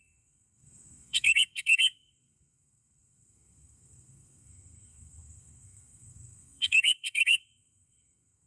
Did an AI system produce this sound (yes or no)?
yes